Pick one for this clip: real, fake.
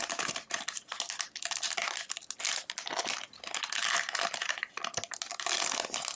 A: real